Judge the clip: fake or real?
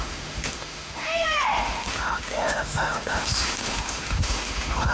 fake